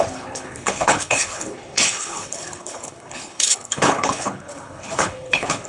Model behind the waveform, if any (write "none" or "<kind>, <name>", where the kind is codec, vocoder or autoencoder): codec, HILCodec